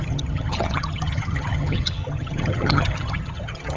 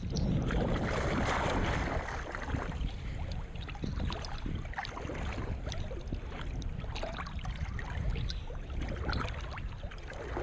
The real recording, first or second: second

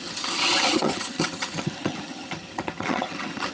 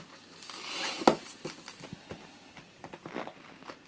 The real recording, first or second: second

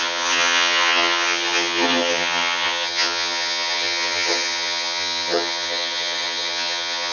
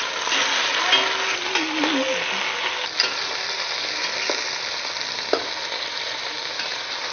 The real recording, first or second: second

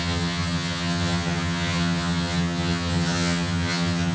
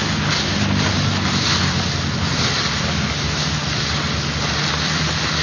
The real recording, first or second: second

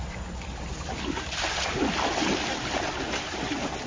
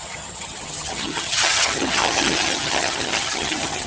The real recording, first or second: first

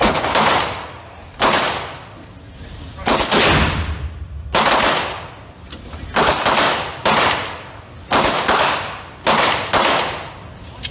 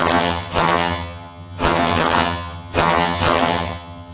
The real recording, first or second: first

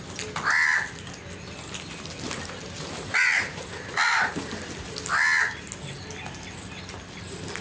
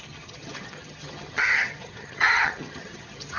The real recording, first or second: first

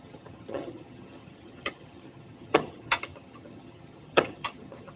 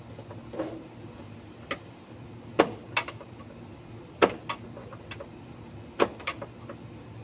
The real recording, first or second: second